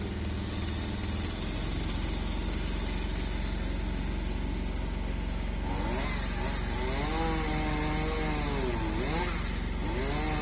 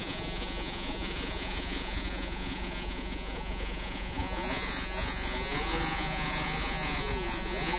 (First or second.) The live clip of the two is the first